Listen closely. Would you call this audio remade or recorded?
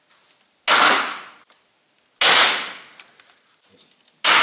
recorded